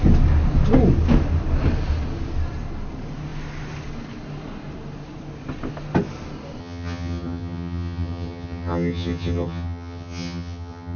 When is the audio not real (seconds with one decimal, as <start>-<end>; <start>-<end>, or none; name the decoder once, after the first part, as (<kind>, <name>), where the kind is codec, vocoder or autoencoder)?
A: 6.6-11.0 (vocoder, HiFi-GAN)